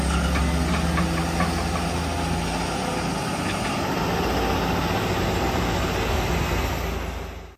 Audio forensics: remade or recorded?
recorded